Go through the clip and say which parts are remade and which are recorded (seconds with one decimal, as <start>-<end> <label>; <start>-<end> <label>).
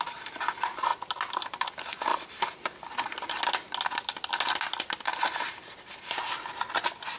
0.0-7.2 recorded